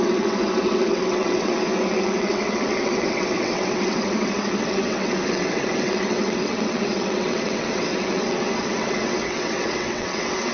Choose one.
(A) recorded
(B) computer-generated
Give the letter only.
B